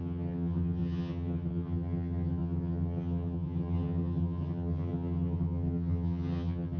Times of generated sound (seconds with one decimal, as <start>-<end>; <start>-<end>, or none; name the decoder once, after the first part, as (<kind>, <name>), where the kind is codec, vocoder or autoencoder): 0.0-6.8 (vocoder, HiFi-GAN)